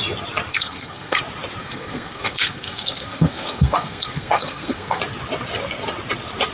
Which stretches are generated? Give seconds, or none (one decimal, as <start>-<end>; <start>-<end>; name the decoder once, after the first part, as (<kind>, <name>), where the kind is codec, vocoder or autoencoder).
0.5-1.2 (codec, SNAC); 1.6-5.0